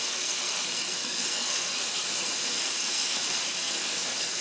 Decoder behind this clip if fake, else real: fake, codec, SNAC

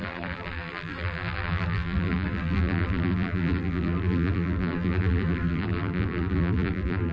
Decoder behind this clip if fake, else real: fake, vocoder, BigVGAN v2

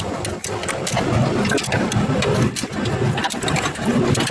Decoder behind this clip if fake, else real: real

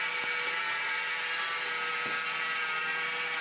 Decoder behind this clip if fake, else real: real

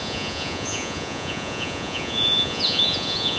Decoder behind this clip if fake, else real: fake, vocoder, Vocos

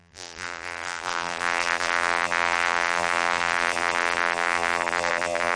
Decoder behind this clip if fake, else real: fake, vocoder, BigVGAN v2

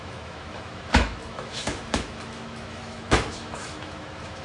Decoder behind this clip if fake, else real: fake, autoencoder, DAC-VAE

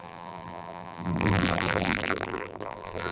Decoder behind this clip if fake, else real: fake, vocoder, BigVGAN v2